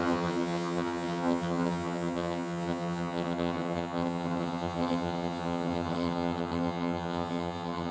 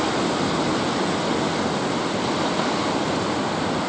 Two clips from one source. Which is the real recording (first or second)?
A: second